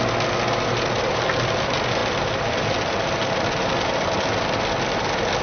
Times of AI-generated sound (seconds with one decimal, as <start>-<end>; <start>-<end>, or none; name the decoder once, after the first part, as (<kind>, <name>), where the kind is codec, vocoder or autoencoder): 2.0-4.2 (vocoder, BigVGAN v2)